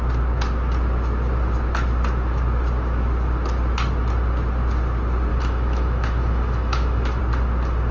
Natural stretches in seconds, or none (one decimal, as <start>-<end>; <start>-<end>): 0.0-5.3; 7.2-7.9